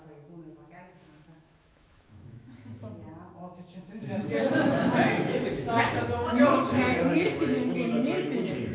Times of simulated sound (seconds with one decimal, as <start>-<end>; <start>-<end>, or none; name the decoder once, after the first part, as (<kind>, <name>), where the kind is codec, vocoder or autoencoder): 0.0-2.7 (autoencoder, DAC-VAE); 3.3-8.7